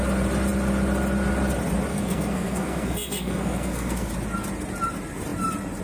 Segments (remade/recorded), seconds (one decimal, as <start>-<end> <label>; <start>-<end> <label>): 0.0-1.9 recorded; 1.9-4.1 remade; 4.1-5.8 recorded